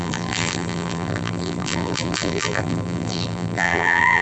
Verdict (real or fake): fake